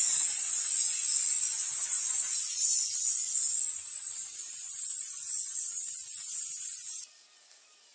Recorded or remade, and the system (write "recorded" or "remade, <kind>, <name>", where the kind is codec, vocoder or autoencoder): recorded